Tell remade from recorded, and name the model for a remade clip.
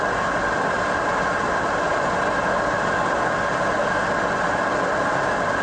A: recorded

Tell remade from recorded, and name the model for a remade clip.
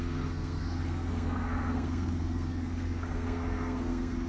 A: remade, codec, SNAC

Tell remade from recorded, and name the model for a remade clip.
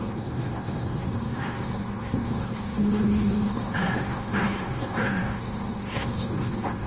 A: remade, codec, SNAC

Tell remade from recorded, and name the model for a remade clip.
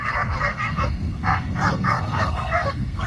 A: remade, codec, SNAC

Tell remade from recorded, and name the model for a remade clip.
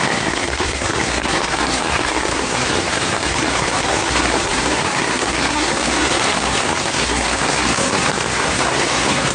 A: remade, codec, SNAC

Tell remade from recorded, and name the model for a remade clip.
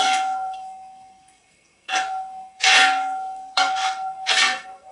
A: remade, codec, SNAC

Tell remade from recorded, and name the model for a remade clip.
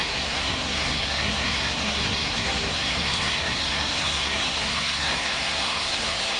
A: remade, codec, SNAC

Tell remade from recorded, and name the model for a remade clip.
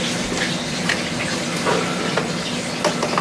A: recorded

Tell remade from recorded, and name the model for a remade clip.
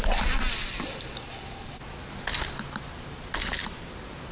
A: recorded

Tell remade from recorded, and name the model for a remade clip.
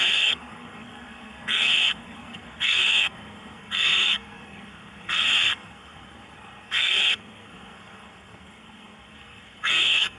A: remade, codec, SNAC